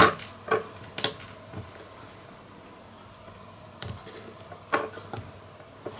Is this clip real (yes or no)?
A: yes